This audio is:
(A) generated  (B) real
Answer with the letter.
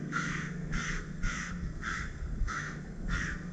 A